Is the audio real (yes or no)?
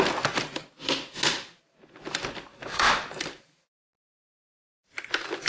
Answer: yes